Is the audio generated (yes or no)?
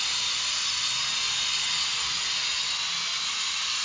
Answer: no